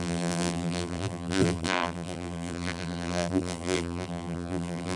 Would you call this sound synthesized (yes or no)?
yes